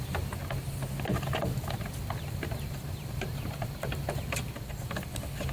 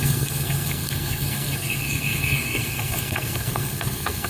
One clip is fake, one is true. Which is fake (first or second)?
second